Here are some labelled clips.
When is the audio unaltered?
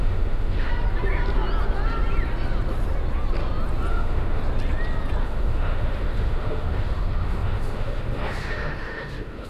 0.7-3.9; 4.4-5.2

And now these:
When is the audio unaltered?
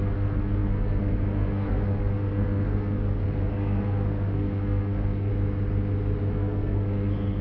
5.3-6.3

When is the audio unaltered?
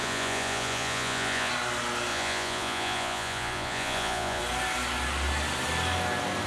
1.5-2.1; 4.4-6.5